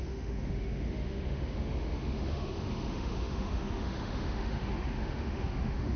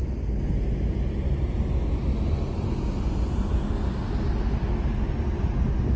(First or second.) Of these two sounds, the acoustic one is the second